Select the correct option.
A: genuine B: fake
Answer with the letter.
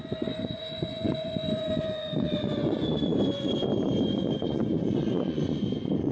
B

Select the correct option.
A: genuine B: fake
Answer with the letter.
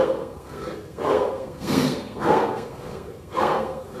B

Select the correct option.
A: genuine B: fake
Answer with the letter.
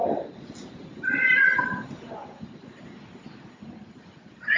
A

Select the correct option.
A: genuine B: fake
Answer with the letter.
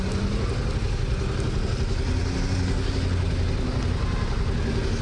A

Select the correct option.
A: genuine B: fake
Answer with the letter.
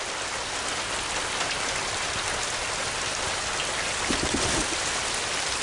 A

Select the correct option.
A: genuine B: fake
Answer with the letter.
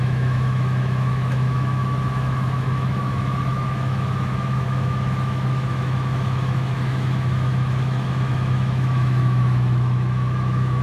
B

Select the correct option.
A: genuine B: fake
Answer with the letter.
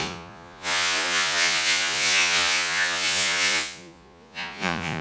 B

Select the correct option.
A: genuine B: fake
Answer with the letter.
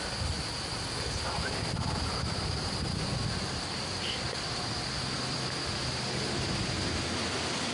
A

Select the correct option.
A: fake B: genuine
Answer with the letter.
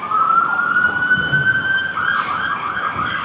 A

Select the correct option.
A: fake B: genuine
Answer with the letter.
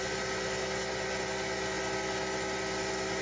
B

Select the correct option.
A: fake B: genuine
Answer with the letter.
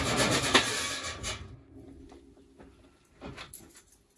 B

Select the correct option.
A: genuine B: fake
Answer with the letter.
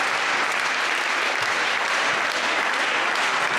A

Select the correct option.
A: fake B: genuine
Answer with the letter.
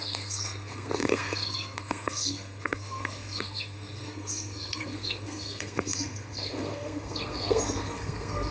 A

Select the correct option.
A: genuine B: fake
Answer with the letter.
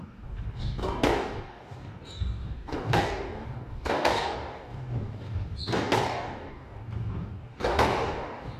B